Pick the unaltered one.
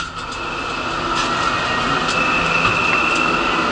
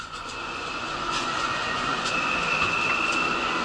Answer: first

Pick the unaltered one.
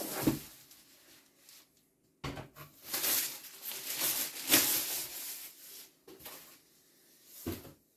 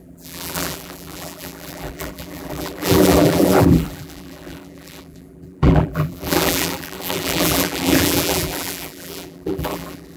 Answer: first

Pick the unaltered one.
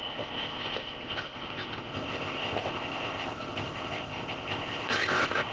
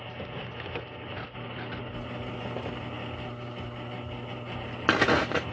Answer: second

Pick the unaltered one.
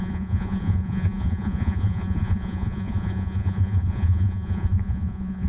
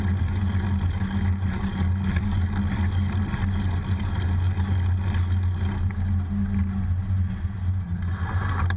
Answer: second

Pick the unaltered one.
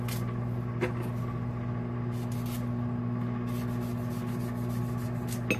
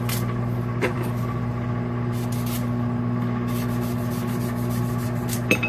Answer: first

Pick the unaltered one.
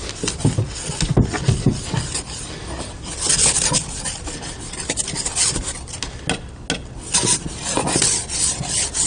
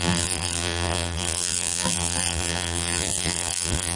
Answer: first